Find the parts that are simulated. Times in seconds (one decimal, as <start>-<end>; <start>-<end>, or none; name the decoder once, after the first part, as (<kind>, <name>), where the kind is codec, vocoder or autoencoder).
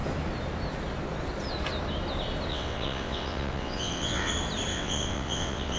2.5-4.3 (vocoder, WaveNeXt); 4.7-5.8